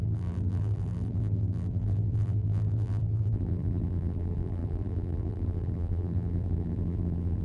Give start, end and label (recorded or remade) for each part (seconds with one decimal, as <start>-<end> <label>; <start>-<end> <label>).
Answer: 0.0-7.4 remade